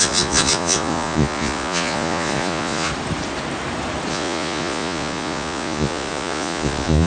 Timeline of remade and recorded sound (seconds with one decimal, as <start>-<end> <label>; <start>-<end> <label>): 0.0-2.9 remade; 2.9-4.1 recorded; 4.1-7.1 remade